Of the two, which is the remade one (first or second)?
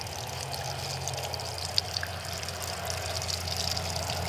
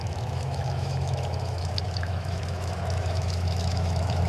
second